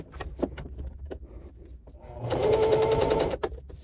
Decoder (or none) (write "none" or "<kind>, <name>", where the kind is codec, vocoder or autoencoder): vocoder, BigVGAN v2